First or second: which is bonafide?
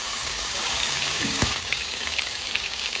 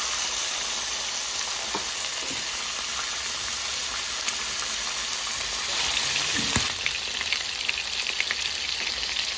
second